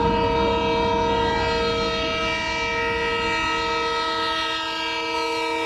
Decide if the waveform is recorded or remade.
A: recorded